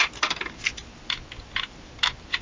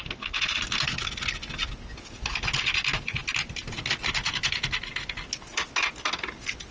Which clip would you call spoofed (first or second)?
first